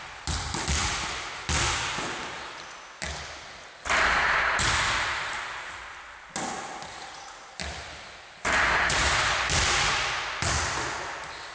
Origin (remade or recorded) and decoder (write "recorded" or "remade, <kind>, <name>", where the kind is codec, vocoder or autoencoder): recorded